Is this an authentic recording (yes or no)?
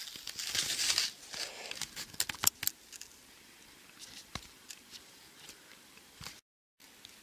yes